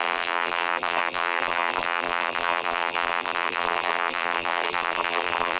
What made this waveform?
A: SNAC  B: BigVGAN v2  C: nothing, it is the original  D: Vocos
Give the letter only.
B